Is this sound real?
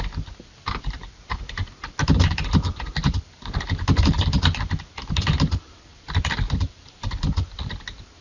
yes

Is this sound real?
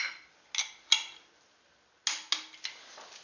yes